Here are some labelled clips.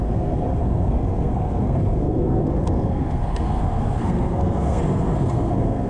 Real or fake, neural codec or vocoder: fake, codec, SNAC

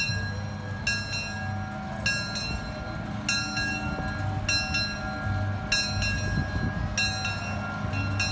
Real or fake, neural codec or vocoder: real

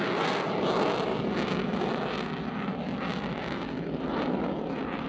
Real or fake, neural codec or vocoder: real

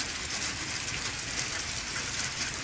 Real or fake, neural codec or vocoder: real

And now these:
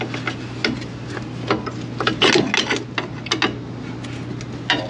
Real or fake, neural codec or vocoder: real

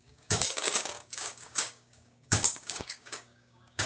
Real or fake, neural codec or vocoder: fake, codec, DAC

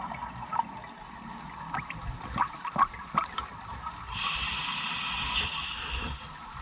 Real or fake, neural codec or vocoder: real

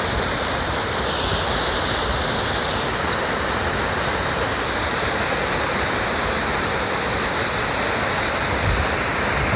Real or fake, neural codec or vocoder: real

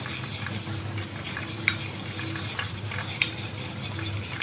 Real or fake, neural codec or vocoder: real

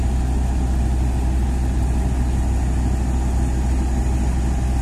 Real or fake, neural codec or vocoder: real